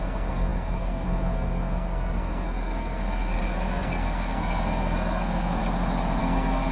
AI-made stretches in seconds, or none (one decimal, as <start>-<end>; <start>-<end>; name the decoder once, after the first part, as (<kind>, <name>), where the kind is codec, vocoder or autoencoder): 0.0-5.6 (codec, SNAC); 6.2-6.7